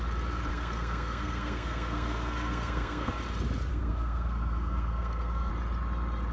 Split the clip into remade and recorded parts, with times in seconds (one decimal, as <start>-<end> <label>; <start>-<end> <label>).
0.0-0.5 recorded; 0.5-3.1 remade; 3.1-3.7 recorded; 3.7-5.5 remade; 5.5-6.3 recorded